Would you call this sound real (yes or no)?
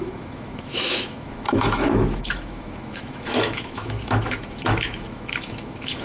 no